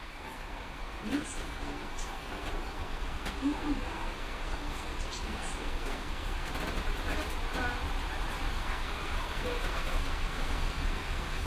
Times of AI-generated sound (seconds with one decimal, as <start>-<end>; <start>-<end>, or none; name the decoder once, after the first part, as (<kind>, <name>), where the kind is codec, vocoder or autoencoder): 0.0-6.5 (codec, SNAC); 8.5-11.5